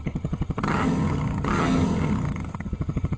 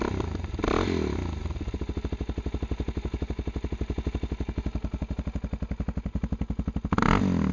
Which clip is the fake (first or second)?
first